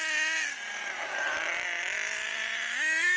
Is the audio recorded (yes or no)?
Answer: yes